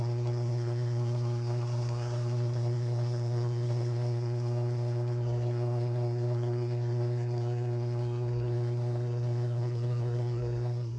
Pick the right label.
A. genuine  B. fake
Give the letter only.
B